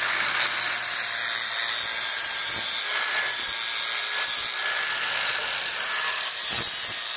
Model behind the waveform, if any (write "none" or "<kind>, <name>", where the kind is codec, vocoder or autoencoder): none